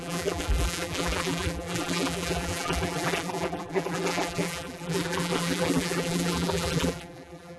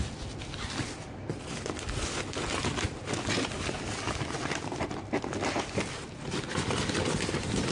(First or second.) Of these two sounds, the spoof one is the first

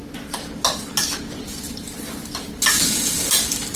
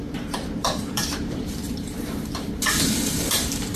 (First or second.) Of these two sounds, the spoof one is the second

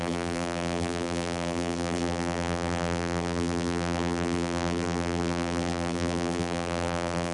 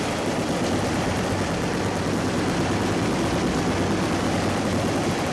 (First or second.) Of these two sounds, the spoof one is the first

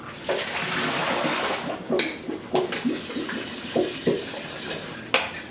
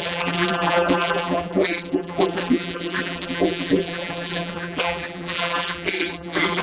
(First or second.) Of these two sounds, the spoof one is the second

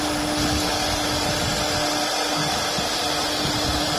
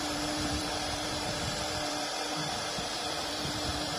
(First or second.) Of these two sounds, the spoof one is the second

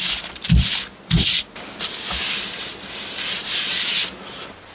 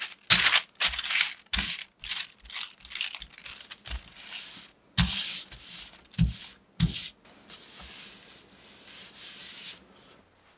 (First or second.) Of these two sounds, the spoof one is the first